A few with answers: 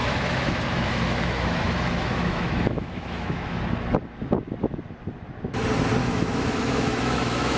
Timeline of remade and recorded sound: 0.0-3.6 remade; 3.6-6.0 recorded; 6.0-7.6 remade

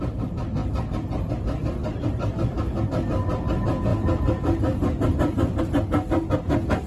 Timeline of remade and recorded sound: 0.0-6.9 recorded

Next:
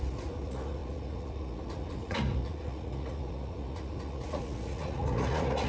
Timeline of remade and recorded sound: 0.0-5.7 remade

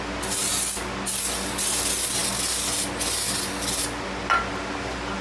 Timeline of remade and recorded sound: 0.0-5.2 recorded

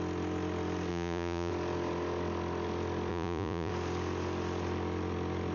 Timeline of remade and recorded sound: 0.0-0.9 recorded; 0.9-1.5 remade; 1.5-3.1 recorded; 3.1-3.7 remade; 3.7-5.5 recorded

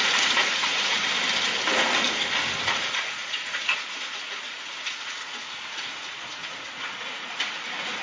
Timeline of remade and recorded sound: 0.0-1.0 remade; 1.0-2.6 recorded; 2.6-8.0 remade

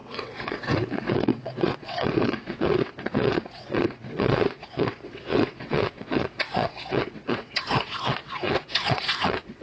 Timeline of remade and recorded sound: 0.0-9.6 remade